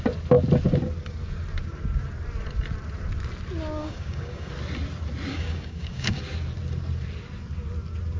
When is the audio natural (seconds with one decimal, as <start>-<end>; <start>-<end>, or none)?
0.0-3.8; 4.5-5.3; 6.2-8.2